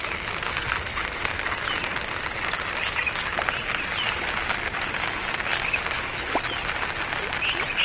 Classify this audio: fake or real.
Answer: real